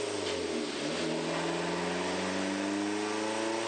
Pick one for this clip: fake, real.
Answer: real